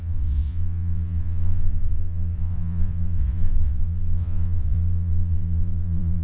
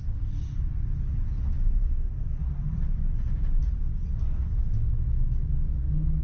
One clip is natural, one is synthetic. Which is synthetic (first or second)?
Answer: first